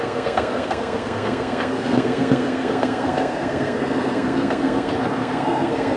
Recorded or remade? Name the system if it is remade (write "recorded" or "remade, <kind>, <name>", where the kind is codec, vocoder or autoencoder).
remade, codec, SNAC